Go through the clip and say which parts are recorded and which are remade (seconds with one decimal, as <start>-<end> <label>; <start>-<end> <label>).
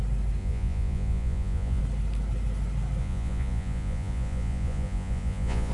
0.0-0.4 recorded; 0.4-1.8 remade; 1.8-3.0 recorded; 3.0-5.7 remade